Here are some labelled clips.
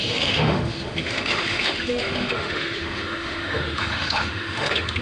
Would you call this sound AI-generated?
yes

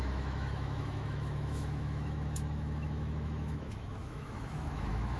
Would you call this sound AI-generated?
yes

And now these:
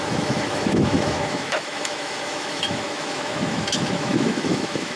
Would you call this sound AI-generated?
yes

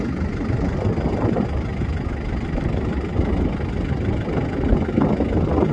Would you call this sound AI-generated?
no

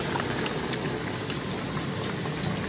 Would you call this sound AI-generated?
no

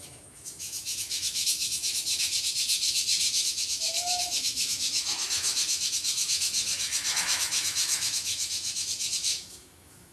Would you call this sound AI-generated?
yes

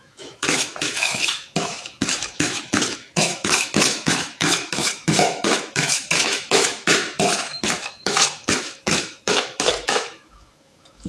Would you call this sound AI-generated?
yes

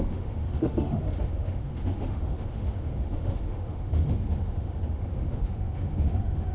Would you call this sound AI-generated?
yes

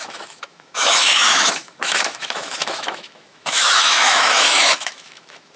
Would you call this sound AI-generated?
yes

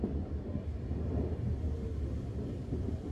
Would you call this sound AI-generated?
no